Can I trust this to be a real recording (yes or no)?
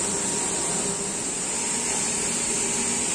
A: yes